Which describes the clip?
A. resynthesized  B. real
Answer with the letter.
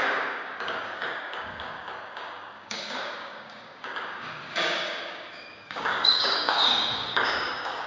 A